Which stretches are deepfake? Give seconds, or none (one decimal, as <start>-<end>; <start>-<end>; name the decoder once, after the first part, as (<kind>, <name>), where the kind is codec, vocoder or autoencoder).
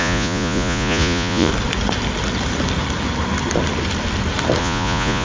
0.0-1.5 (vocoder, Vocos); 4.6-5.2